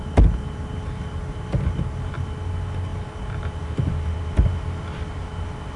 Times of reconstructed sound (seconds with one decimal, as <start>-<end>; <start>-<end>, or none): none